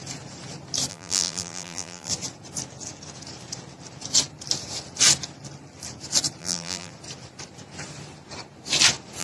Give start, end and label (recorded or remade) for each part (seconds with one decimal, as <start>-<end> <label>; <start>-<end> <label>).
0.0-0.9 recorded; 0.9-2.1 remade; 2.1-6.4 recorded; 6.4-6.9 remade; 6.9-9.2 recorded